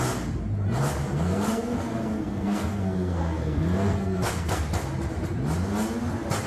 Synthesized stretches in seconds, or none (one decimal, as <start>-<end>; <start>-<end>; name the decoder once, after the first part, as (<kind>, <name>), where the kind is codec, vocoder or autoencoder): 1.0-4.6 (codec, SNAC)